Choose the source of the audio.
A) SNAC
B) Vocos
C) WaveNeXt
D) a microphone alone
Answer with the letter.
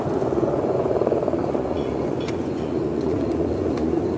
B